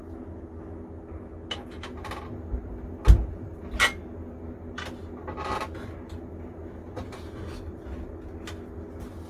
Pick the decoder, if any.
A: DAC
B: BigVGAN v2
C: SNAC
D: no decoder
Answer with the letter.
D